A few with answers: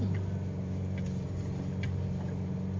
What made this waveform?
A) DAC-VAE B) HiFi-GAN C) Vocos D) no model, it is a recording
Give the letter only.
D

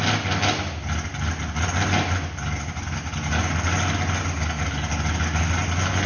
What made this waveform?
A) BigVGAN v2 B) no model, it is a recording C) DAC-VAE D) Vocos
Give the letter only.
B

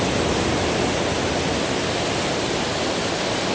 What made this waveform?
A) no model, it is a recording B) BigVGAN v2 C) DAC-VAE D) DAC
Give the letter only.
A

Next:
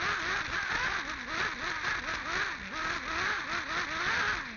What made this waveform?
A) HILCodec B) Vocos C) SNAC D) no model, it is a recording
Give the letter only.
D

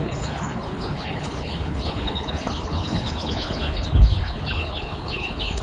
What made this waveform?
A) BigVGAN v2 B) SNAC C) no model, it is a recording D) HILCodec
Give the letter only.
D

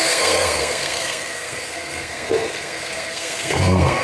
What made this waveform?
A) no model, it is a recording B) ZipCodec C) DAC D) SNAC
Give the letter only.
D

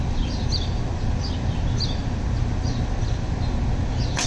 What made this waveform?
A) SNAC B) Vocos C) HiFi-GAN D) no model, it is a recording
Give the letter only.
D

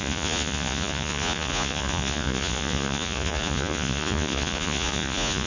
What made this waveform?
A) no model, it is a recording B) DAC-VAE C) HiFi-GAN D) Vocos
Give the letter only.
D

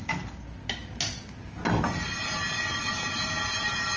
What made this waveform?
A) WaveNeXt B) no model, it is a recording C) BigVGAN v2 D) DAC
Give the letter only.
B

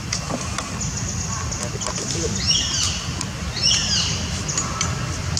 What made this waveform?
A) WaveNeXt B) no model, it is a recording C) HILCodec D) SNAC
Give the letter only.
B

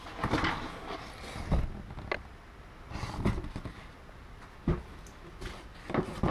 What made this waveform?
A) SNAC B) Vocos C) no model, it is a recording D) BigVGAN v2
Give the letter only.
C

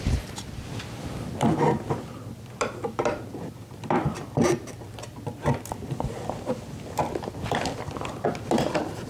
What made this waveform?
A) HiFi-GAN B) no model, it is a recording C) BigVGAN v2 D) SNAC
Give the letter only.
C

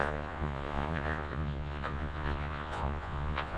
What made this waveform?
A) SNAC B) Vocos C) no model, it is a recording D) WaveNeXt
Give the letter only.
B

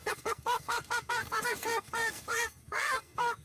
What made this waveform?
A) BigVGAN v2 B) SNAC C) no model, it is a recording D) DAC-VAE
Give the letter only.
B